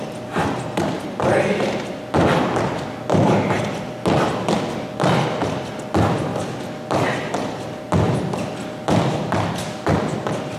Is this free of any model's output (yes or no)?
yes